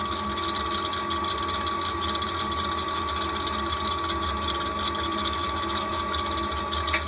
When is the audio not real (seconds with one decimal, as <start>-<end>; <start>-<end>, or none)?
5.2-6.0